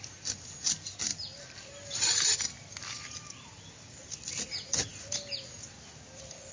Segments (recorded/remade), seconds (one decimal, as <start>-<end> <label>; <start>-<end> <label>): 0.0-6.5 recorded